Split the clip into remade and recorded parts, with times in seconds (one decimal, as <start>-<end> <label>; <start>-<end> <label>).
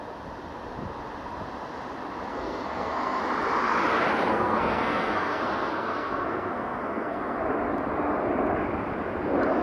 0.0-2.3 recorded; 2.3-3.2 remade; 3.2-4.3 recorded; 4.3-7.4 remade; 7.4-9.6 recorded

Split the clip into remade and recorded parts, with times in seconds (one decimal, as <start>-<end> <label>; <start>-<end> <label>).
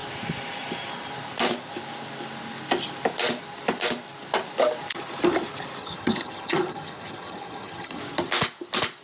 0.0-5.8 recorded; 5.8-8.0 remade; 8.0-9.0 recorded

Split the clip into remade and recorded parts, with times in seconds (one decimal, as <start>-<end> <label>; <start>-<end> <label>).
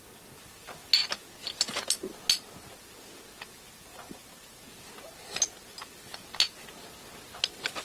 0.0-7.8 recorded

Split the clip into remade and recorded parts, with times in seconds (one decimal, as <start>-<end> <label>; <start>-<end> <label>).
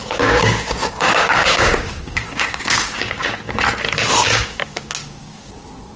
0.0-3.6 remade; 3.6-4.2 recorded; 4.2-5.6 remade; 5.6-6.0 recorded